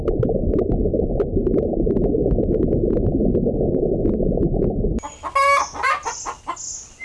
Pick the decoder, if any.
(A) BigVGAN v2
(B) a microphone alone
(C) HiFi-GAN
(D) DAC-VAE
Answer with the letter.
B